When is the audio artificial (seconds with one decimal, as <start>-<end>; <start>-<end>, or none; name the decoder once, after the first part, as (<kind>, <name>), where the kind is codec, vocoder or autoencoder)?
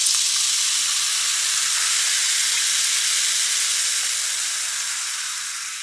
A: none